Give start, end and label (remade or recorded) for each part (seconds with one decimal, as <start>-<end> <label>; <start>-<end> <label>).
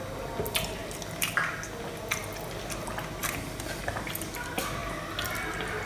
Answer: 0.0-5.9 recorded